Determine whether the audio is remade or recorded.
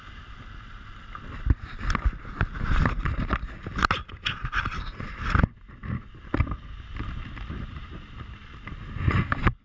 recorded